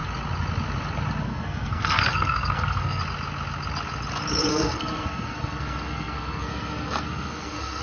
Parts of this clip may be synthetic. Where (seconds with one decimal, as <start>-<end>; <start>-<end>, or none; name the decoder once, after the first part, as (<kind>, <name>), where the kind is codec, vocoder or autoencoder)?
1.3-3.0 (codec, SNAC); 4.5-7.8